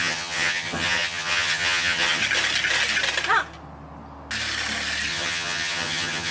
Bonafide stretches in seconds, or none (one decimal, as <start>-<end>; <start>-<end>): 2.2-5.1